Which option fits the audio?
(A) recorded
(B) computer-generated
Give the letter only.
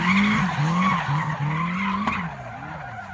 A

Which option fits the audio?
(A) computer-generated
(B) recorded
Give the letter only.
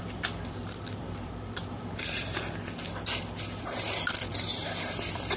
A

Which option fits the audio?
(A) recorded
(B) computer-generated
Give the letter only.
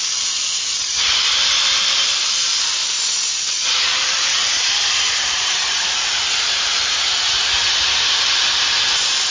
B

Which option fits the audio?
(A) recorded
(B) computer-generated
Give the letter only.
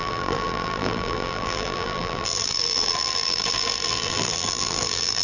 B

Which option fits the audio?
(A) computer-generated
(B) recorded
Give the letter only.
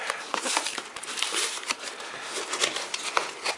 A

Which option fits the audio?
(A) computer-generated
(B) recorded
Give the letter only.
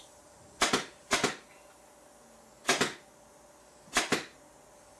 B